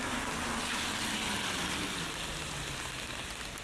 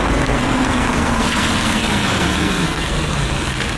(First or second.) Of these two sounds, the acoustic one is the first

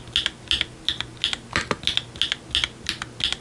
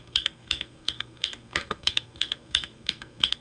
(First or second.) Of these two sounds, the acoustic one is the first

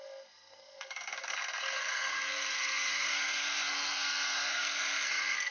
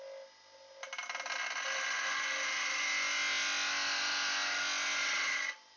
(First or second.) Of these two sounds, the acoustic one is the second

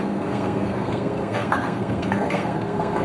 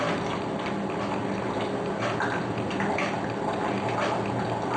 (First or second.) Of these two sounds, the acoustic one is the second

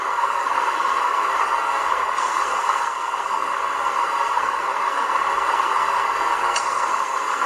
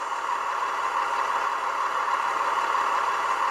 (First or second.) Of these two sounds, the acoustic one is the second